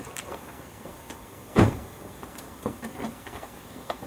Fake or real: fake